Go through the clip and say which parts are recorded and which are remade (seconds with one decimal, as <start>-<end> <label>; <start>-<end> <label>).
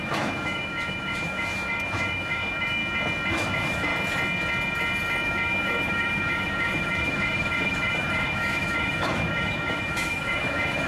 0.0-2.8 remade; 2.8-3.3 recorded; 3.3-3.9 remade; 3.9-5.2 recorded; 5.2-10.9 remade